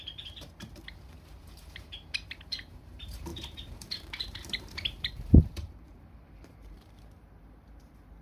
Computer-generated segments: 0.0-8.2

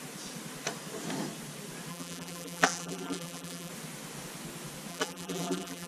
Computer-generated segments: 1.9-3.7; 4.9-5.9

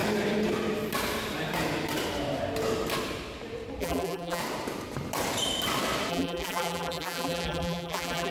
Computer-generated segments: 3.8-4.4; 6.1-8.3

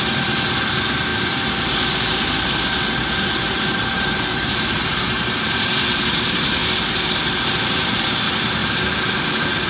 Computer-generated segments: 0.0-6.6; 7.4-8.6; 9.2-9.7

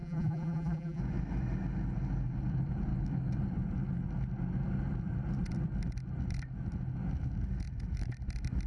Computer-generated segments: 0.0-1.0

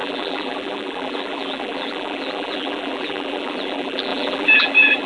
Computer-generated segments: 0.0-5.1

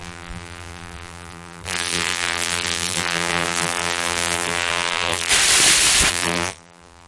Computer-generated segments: 0.0-5.3; 6.1-7.1